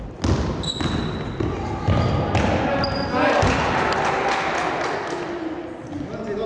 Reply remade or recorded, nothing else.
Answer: recorded